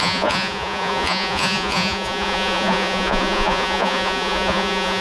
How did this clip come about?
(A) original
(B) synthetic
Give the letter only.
B